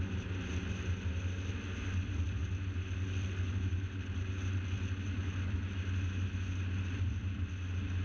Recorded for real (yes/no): yes